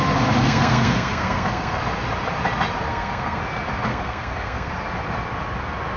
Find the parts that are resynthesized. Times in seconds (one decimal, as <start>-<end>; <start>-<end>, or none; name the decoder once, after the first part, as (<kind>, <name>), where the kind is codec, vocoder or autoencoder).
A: 0.4-1.8 (codec, SNAC); 2.9-3.4; 3.9-4.7